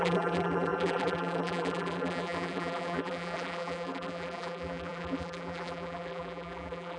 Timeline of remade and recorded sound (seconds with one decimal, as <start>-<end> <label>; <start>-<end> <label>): 0.0-7.0 remade